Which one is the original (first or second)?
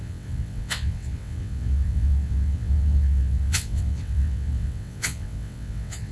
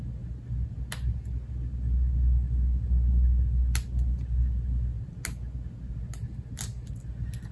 second